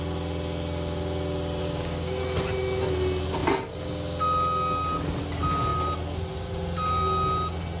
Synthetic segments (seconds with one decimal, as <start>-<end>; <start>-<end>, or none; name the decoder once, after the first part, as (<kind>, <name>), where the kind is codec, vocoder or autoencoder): 1.6-2.2 (codec, DAC)